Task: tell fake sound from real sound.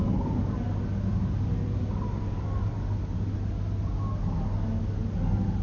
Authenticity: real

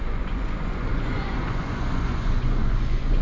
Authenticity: fake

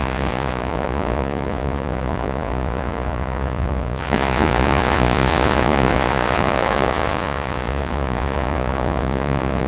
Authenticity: fake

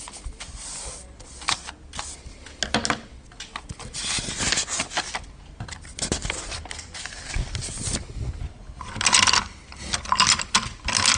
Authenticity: real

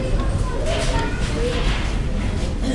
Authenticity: real